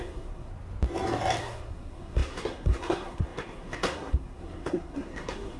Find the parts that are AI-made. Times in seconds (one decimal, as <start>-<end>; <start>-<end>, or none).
0.0-0.5; 1.4-5.6